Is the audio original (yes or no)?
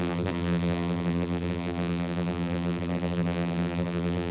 no